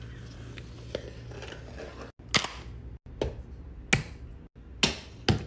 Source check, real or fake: real